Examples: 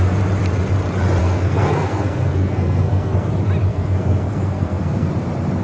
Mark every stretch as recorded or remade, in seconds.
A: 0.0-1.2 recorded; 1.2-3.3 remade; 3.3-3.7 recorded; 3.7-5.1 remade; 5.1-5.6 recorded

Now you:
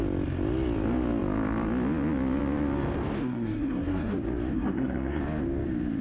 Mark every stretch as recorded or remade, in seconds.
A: 0.0-3.2 recorded; 3.2-4.1 remade; 4.1-4.5 recorded; 4.5-5.2 remade; 5.2-6.0 recorded

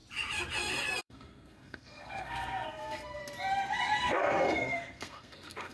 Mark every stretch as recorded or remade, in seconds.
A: 0.0-1.0 recorded; 1.0-3.2 remade; 3.2-4.0 recorded; 4.0-5.7 remade

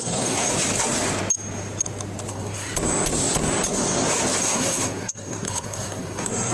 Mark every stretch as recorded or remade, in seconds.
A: 0.0-0.5 remade; 0.5-2.3 recorded; 2.3-2.7 remade; 2.7-4.4 recorded; 4.4-6.5 remade

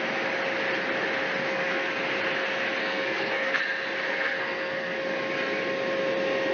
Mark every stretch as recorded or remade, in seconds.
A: 0.0-1.5 recorded; 1.5-2.0 remade; 2.0-2.8 recorded; 2.8-3.6 remade; 3.6-4.1 recorded; 4.1-5.0 remade; 5.0-6.5 recorded

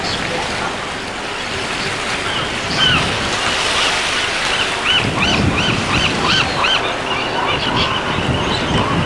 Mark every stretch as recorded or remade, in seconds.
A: 0.0-9.1 recorded